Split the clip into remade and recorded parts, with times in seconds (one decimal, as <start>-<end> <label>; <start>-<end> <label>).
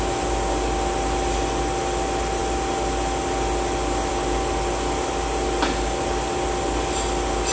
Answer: 0.0-7.5 recorded